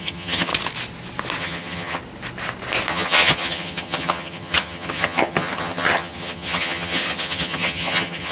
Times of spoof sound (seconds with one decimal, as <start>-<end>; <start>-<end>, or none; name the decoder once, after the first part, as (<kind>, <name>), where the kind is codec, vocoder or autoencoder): 0.0-0.5 (vocoder, HiFi-GAN); 1.4-2.0; 2.9-8.3